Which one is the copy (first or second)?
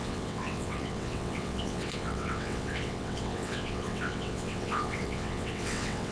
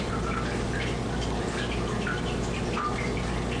first